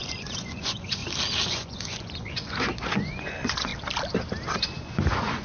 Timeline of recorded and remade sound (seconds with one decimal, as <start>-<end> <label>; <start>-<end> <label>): 0.0-1.0 remade; 1.0-1.5 recorded; 1.5-3.7 remade; 3.7-4.6 recorded; 4.6-5.4 remade